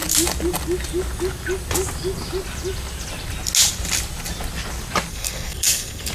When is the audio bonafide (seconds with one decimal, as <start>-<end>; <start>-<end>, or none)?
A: 0.0-5.1